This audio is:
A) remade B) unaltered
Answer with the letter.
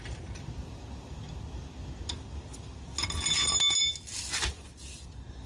B